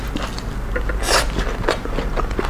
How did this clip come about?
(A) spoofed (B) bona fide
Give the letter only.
B